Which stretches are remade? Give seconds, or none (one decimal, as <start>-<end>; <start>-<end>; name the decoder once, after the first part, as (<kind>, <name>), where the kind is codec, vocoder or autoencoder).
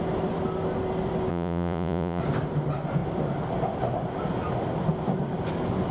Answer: 1.3-2.2 (vocoder, Vocos)